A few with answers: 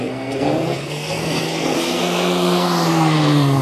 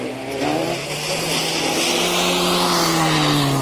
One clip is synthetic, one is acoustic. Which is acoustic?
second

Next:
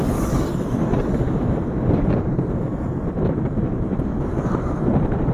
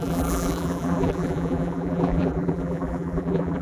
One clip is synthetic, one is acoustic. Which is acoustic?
first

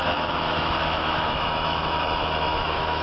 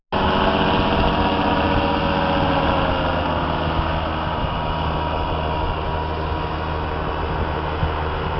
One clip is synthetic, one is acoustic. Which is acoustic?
second